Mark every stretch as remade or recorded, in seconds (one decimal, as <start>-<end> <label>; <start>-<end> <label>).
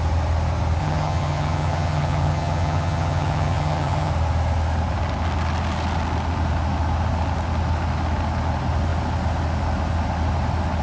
0.0-0.8 recorded; 0.8-4.1 remade; 4.1-10.8 recorded